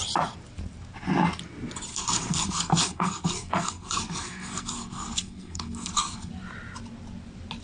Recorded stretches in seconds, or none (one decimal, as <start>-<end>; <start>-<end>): 0.0-1.9; 6.3-7.6